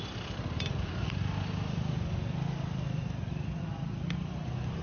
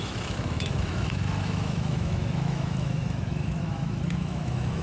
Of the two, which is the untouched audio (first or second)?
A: first